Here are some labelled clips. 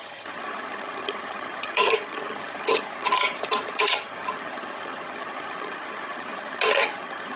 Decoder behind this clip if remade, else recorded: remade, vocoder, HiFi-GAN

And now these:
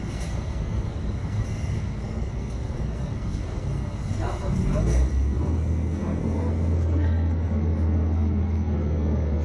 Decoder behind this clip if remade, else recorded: remade, codec, SNAC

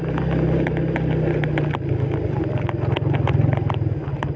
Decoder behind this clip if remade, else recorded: recorded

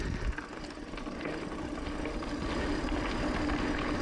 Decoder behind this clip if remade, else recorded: recorded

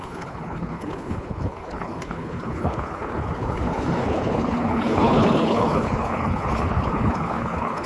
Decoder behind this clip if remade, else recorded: remade, codec, HILCodec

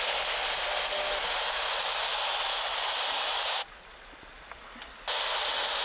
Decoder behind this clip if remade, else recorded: recorded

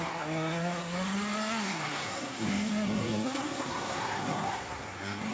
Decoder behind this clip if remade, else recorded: remade, codec, SNAC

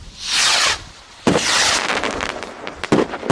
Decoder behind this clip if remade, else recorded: recorded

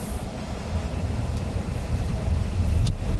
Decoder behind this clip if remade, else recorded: recorded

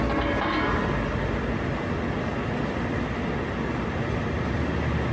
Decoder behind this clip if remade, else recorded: recorded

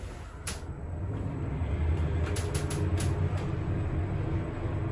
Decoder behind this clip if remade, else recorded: recorded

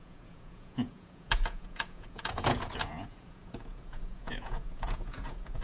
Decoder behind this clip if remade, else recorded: remade, vocoder, Vocos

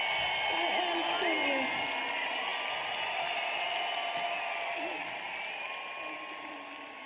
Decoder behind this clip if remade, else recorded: recorded